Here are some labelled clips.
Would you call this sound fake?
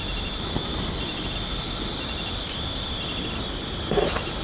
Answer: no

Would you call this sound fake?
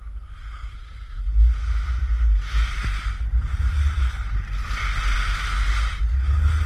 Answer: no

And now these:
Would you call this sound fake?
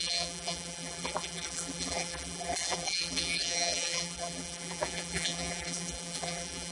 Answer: yes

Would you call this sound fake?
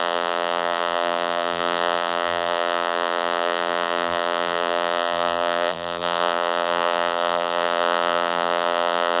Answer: yes